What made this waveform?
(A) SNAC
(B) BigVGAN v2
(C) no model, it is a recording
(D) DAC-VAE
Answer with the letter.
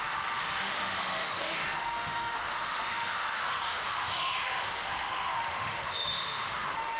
D